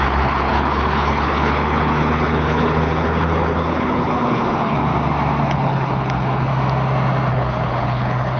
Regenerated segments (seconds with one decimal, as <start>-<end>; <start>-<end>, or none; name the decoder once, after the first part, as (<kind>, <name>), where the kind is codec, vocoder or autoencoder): 0.0-4.9 (codec, HILCodec); 5.4-6.5; 7.3-8.4